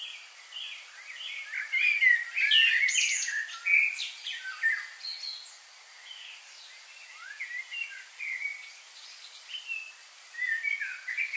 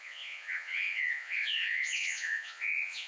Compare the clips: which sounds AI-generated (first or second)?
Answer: second